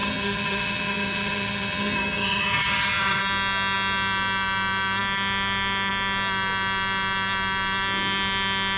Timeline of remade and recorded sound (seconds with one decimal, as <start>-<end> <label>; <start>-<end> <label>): 0.0-3.2 remade; 3.2-8.8 recorded